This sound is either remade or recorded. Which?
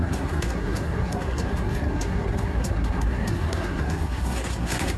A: remade